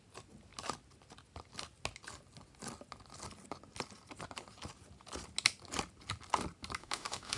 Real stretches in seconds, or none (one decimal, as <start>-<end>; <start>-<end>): 0.0-6.8

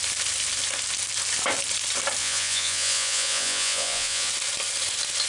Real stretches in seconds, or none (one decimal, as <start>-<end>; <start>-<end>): 0.0-2.2; 4.3-5.3

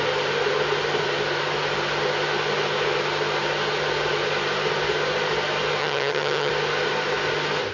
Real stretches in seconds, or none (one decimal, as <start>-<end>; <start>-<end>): 0.0-5.8; 6.5-7.7

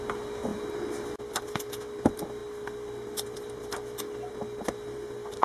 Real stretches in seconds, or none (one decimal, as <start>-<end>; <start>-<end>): 0.0-5.4

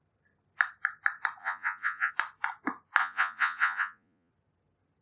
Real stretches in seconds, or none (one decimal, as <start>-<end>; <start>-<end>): 0.0-1.4; 2.1-3.0; 4.3-5.0

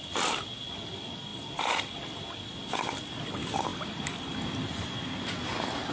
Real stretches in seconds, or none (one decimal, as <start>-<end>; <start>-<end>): 0.0-5.9

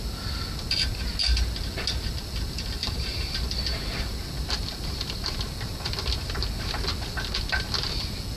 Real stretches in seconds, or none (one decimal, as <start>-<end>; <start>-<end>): 0.0-2.8; 3.4-8.4

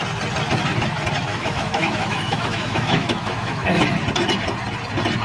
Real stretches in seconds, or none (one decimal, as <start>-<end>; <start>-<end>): 0.0-1.3; 3.8-5.2